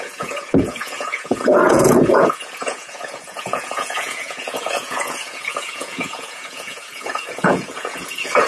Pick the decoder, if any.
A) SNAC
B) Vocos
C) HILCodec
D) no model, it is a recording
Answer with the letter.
B